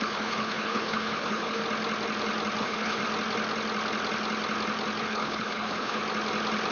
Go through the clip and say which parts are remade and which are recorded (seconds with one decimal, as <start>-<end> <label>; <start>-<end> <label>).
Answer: 0.0-1.6 remade; 1.6-2.6 recorded; 2.6-3.0 remade; 3.0-5.0 recorded; 5.0-6.0 remade; 6.0-6.7 recorded